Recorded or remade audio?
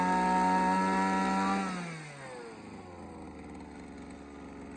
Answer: recorded